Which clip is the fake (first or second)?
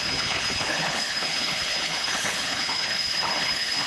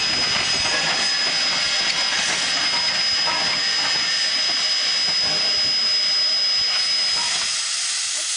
first